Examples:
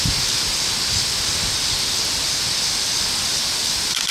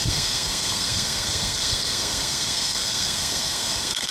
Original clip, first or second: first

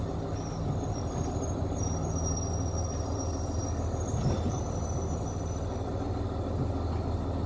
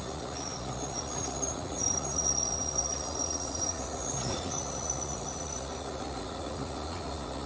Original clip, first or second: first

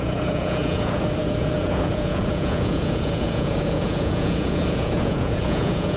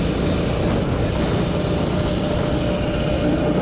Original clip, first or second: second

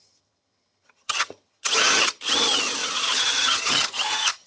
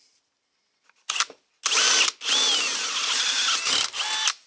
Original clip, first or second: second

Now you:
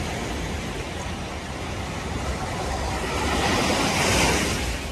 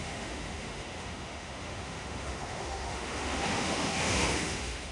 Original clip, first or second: first